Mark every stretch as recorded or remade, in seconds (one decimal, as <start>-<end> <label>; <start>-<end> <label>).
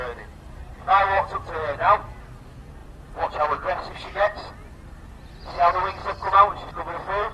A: 0.0-0.7 recorded; 0.7-2.1 remade; 2.1-2.8 recorded; 2.8-4.5 remade; 4.5-6.0 recorded; 6.0-6.7 remade; 6.7-7.3 recorded